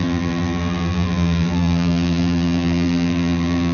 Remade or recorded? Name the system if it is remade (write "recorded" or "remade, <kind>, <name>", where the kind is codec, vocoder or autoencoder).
remade, vocoder, BigVGAN v2